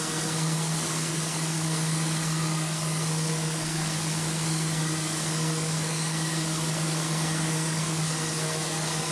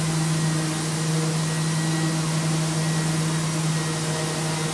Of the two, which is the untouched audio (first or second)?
second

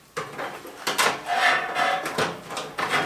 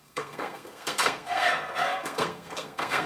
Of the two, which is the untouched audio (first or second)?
first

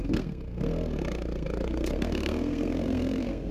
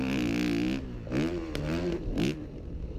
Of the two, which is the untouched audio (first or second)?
second